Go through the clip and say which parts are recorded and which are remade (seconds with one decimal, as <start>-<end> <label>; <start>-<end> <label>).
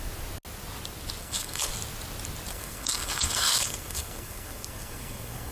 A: 0.0-1.2 recorded; 1.2-1.7 remade; 1.7-2.5 recorded; 2.5-5.5 remade